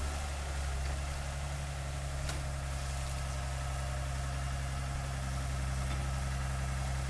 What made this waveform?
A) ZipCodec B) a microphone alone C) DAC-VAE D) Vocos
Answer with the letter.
B